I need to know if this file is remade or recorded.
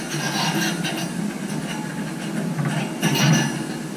recorded